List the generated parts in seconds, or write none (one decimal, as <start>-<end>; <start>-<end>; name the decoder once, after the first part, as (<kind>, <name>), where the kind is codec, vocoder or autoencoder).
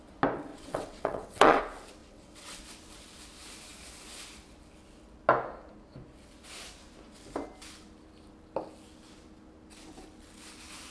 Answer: 0.5-1.6 (vocoder, WaveNeXt); 2.0-2.6